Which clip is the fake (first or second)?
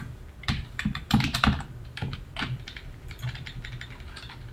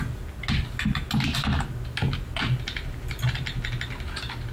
first